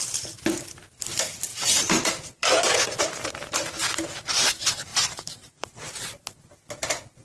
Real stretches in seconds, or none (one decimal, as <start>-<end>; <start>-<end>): 0.0-1.5; 3.3-4.9; 6.4-7.2